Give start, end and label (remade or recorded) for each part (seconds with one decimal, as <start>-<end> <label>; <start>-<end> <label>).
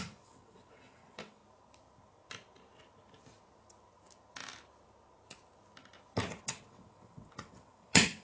0.0-1.4 remade; 1.4-6.3 recorded; 6.3-8.2 remade